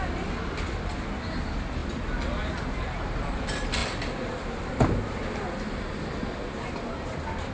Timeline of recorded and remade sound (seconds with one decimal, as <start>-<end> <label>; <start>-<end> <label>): 0.0-7.5 recorded